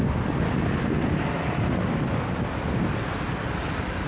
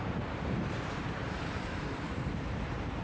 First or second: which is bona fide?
first